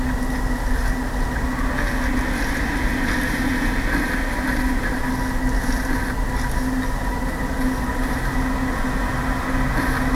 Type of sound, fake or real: real